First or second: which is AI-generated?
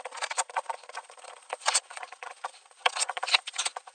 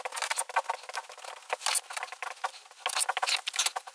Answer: first